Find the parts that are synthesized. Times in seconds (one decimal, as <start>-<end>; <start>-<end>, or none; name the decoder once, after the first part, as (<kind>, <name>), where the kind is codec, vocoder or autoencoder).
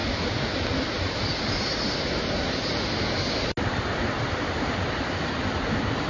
none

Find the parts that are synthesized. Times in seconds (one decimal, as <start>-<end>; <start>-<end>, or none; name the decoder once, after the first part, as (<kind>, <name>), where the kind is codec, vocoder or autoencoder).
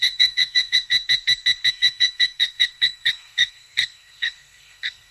0.0-0.9 (codec, SNAC); 1.7-5.1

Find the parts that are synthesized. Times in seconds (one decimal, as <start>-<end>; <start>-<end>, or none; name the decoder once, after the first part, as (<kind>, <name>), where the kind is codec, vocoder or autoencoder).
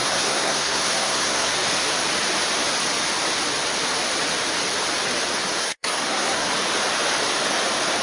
0.0-1.5 (codec, SNAC); 5.6-6.5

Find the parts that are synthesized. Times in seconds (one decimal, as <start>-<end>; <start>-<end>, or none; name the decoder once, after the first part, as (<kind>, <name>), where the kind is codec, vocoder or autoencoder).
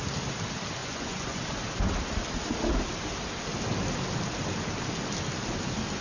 0.8-1.4 (vocoder, Vocos)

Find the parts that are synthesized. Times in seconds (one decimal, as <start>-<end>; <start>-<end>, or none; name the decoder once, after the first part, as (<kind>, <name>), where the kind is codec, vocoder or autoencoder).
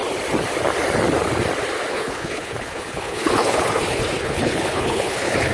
1.9-5.5 (codec, HILCodec)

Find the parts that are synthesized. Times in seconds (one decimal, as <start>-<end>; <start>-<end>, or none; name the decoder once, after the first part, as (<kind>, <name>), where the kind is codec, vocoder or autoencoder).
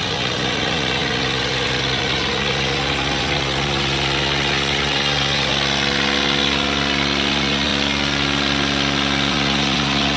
0.0-5.5 (vocoder, Vocos); 7.3-7.7; 9.3-10.2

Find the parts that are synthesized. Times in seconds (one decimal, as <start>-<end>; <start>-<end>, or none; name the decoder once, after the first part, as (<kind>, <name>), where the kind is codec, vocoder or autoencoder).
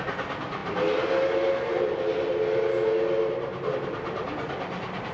none